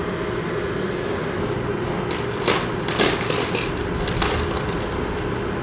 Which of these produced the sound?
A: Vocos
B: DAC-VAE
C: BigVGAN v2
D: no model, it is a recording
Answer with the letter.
D